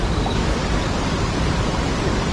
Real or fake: fake